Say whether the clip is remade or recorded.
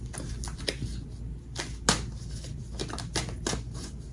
recorded